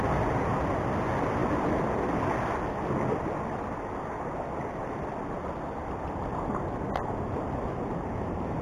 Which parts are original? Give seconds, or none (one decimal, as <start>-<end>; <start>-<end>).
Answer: 0.0-8.6